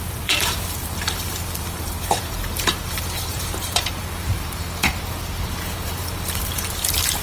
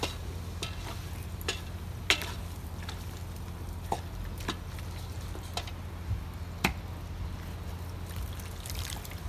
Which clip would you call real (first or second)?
second